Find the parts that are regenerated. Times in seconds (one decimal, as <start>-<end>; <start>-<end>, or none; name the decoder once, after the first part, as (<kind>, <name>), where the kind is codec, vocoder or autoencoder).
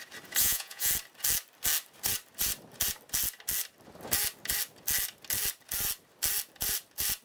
0.4-0.9 (vocoder, Vocos)